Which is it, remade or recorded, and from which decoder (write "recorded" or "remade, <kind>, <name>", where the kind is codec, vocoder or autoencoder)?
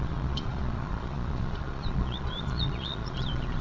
remade, vocoder, Vocos